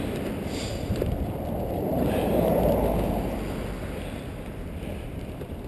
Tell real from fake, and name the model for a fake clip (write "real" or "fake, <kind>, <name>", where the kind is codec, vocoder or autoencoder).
fake, vocoder, BigVGAN v2